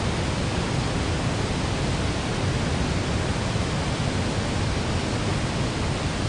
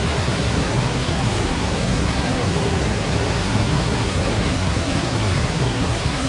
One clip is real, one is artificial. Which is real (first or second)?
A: first